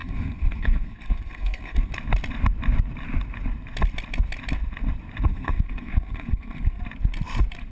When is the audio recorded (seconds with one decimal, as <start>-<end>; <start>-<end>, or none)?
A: 1.9-5.3; 6.8-7.7